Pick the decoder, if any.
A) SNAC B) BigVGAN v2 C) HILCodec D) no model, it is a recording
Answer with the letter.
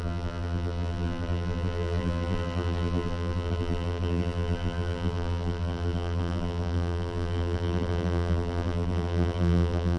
B